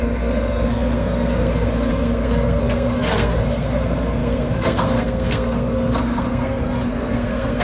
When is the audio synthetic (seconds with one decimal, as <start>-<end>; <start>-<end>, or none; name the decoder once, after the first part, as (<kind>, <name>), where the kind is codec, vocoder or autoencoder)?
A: 0.0-7.6 (codec, SNAC)